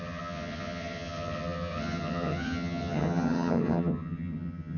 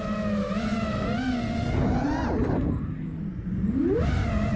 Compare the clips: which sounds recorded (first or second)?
second